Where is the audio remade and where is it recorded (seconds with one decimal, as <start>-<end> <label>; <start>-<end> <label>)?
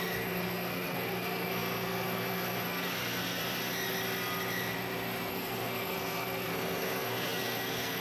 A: 0.0-3.4 remade; 3.4-5.3 recorded; 5.3-8.0 remade